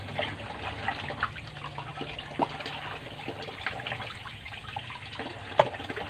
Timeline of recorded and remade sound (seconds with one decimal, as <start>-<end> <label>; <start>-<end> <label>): 0.0-6.1 recorded